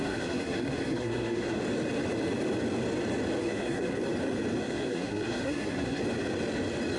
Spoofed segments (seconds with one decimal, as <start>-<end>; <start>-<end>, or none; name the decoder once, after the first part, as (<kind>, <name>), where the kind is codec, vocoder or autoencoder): 0.0-1.6 (codec, SNAC); 3.4-4.0; 4.6-6.0

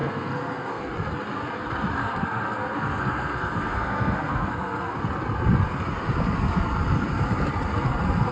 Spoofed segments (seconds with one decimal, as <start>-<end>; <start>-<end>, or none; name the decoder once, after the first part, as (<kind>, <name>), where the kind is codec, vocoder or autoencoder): 0.0-0.8 (codec, SNAC); 2.0-5.0